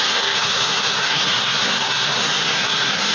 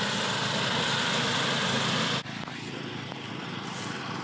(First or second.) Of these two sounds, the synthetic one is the first